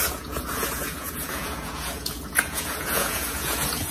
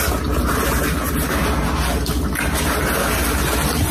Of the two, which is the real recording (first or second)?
second